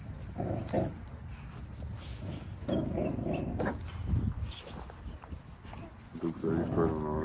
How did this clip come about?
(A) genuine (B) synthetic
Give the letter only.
A